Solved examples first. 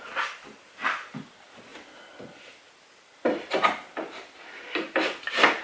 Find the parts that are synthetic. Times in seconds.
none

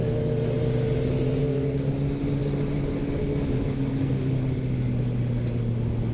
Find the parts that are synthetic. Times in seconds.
1.4-1.9 (codec, SNAC); 3.6-4.2

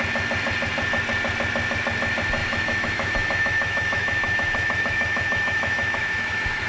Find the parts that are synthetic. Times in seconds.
2.4-6.7 (autoencoder, DAC-VAE)

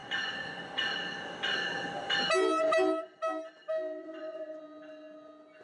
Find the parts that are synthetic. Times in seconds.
0.0-0.9 (vocoder, Vocos); 4.0-4.6

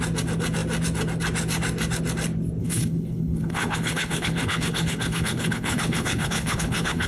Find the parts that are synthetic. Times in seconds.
2.6-7.1 (codec, HILCodec)